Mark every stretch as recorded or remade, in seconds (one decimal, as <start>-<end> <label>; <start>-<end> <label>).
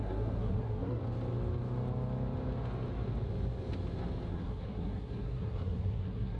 0.0-1.0 remade; 1.0-4.3 recorded; 4.3-6.4 remade